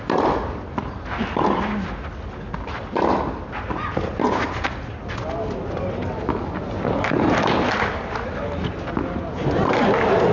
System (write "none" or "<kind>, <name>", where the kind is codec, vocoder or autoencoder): none